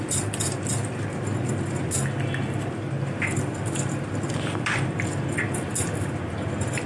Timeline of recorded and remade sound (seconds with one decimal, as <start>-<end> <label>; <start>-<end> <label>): 0.0-6.9 recorded